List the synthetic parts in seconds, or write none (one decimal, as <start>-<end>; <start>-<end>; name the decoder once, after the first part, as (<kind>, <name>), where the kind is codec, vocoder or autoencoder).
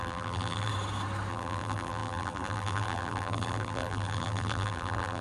0.0-0.7 (vocoder, BigVGAN v2); 1.3-5.2